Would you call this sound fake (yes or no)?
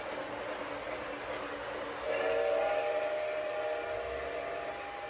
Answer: no